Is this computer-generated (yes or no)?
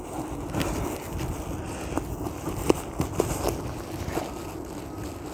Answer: no